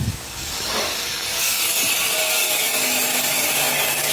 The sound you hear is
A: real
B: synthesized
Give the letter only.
B